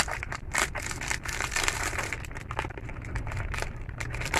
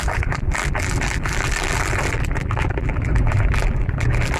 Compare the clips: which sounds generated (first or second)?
second